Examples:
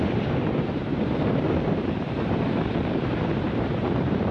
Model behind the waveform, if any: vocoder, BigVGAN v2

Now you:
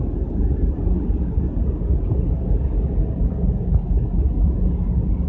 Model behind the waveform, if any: none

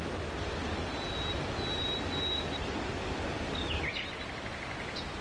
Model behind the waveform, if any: none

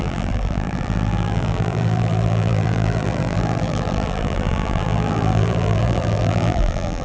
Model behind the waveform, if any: vocoder, BigVGAN v2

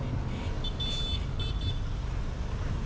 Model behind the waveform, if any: none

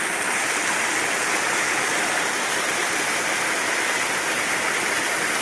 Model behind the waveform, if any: none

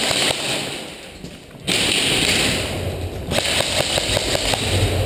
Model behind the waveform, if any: none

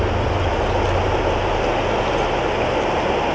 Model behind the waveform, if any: none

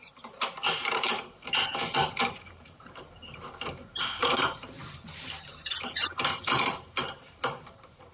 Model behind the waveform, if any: vocoder, BigVGAN v2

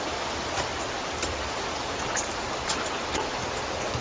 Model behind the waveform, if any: none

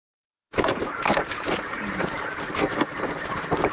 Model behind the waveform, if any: vocoder, BigVGAN v2